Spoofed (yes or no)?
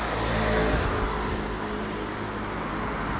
no